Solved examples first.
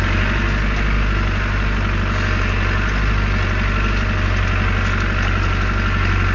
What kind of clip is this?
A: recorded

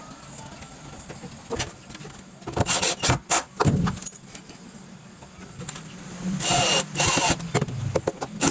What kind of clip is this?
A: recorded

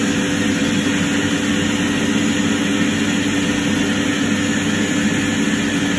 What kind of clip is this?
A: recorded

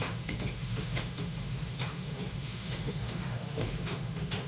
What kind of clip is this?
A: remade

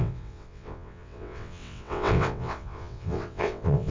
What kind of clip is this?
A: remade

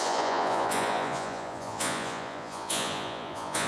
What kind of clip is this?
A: remade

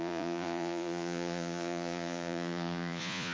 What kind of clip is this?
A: remade